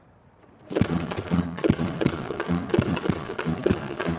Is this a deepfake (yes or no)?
yes